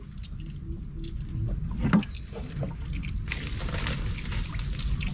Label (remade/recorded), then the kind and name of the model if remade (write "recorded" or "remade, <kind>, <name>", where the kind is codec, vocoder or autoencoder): recorded